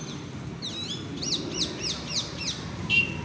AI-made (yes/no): no